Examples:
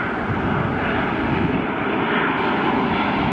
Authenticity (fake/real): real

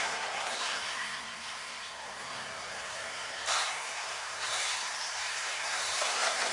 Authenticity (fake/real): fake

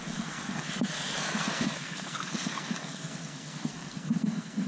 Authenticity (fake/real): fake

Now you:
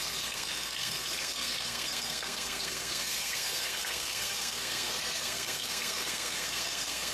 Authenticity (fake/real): fake